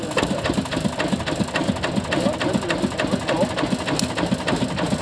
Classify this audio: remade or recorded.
recorded